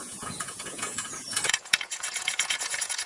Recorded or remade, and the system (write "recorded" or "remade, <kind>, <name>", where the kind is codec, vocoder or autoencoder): remade, vocoder, Vocos